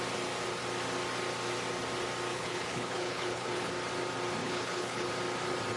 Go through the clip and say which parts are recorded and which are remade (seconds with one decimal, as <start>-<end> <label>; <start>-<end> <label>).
0.0-2.3 recorded; 2.3-3.7 remade; 3.7-4.4 recorded; 4.4-5.1 remade; 5.1-5.8 recorded